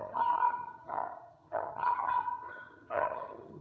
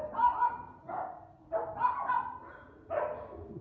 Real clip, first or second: second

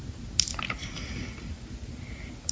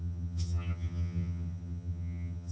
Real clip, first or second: first